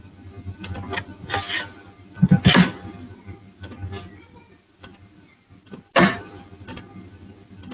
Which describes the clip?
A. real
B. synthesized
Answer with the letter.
A